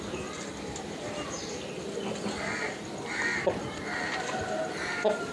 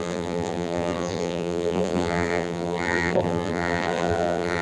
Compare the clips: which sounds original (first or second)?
first